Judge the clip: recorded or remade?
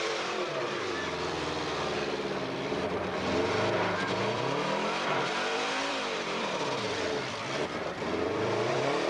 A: remade